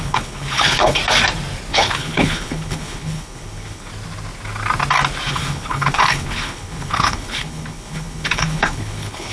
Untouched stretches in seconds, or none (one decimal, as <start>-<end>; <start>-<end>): 1.0-1.7; 3.9-5.3